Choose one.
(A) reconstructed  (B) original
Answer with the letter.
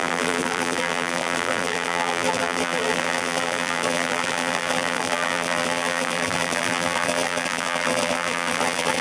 A